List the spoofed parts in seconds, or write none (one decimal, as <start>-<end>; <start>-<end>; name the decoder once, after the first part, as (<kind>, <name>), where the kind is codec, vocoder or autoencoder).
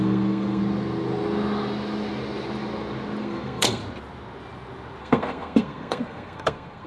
0.0-0.6 (codec, SNAC); 3.2-3.8; 5.0-6.9